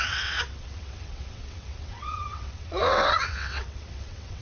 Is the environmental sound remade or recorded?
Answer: remade